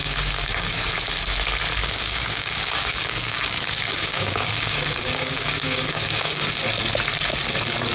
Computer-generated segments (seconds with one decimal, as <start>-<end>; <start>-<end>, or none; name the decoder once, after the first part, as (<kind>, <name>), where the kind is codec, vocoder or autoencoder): 0.0-0.9 (codec, DAC); 1.8-6.5